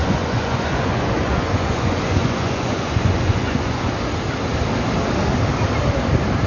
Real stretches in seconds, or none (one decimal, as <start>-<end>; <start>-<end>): 3.9-6.5